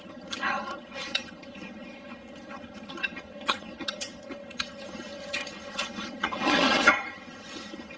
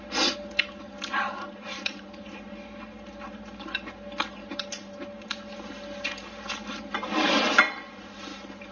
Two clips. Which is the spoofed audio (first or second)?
first